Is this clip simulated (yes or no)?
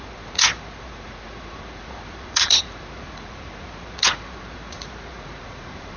yes